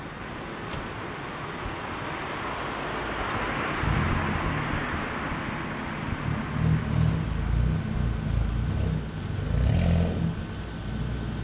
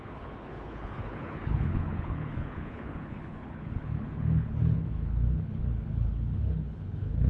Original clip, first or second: first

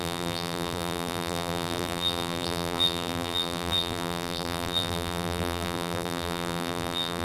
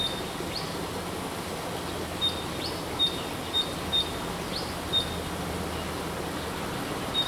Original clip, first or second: second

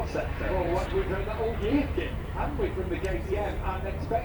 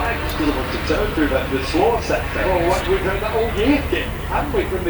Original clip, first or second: second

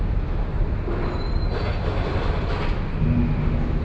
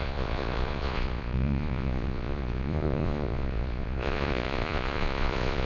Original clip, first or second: first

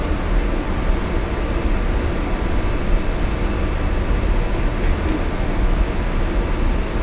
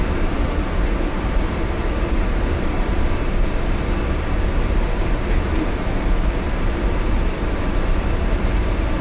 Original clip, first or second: first